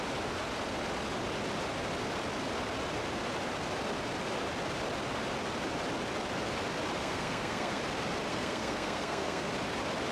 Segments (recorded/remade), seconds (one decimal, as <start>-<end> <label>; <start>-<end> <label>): 0.0-7.0 recorded; 7.0-7.8 remade; 7.8-8.3 recorded; 8.3-9.5 remade; 9.5-10.1 recorded